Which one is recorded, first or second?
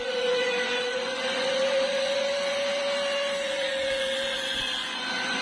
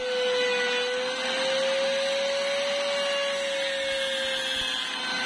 second